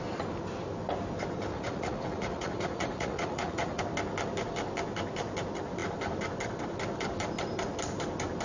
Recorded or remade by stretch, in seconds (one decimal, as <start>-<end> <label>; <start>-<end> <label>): 0.0-1.5 recorded; 1.5-3.8 remade; 3.8-8.4 recorded